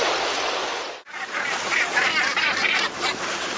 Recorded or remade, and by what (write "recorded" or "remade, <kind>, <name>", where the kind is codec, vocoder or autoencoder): remade, vocoder, BigVGAN v2